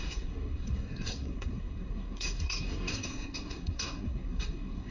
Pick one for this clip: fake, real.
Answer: fake